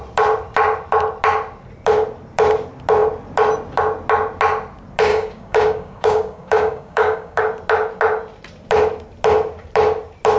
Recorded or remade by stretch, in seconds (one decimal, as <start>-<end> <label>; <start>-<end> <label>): 0.0-5.1 recorded; 5.1-7.4 remade; 7.4-10.4 recorded

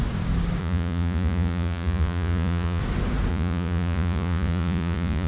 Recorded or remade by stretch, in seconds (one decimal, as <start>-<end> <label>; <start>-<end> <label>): 0.0-0.6 recorded; 0.6-2.8 remade; 2.8-3.3 recorded; 3.3-5.3 remade

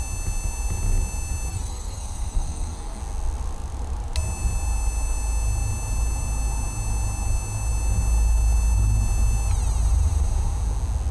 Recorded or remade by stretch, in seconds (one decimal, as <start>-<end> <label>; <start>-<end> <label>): 0.0-1.5 recorded; 1.5-3.0 remade; 3.0-11.1 recorded